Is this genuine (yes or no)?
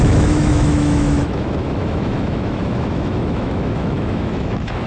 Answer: no